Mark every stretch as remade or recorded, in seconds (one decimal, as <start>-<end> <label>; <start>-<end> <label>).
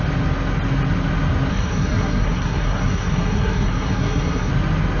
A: 0.0-1.5 recorded; 1.5-4.5 remade; 4.5-5.0 recorded